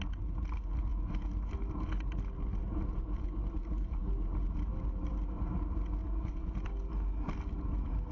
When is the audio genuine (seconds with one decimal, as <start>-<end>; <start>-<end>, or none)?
0.0-2.6; 3.2-6.0; 6.6-8.1